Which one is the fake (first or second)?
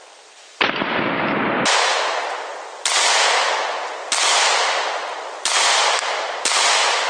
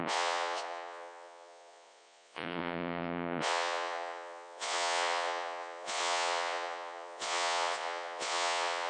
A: second